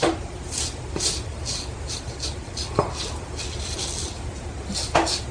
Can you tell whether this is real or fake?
real